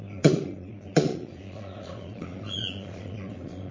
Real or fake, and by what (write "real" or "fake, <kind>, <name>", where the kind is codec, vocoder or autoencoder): fake, vocoder, Vocos